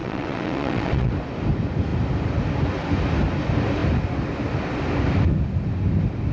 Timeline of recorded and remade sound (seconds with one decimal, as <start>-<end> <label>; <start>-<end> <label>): 0.0-1.1 remade; 1.1-6.3 recorded